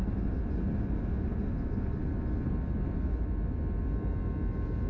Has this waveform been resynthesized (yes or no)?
no